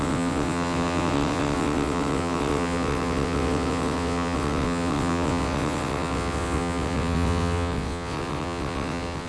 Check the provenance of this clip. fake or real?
fake